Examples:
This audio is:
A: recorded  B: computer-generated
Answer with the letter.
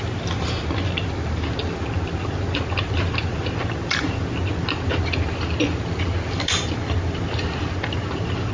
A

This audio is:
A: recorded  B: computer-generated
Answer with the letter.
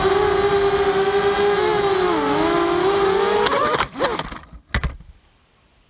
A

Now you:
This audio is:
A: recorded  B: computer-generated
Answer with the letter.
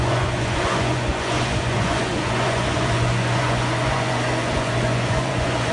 B